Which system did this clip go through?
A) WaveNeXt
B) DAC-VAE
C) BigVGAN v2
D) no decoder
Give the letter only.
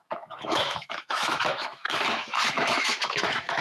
B